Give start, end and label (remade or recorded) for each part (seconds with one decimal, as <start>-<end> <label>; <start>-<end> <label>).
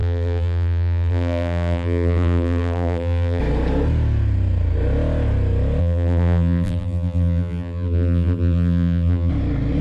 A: 0.0-3.4 remade; 3.4-5.8 recorded; 5.8-9.3 remade; 9.3-9.8 recorded